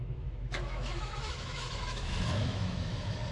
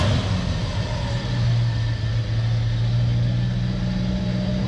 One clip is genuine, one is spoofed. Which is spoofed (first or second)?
first